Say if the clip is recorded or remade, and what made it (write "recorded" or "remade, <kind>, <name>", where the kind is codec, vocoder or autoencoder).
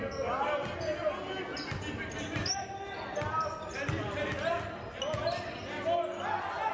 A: recorded